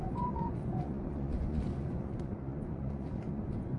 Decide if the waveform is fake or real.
fake